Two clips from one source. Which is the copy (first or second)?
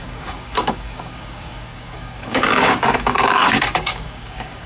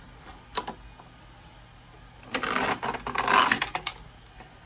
first